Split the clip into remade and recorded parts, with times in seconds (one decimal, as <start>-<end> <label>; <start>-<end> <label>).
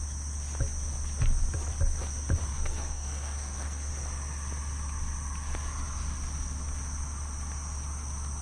0.0-2.5 recorded; 2.5-3.9 remade; 3.9-8.4 recorded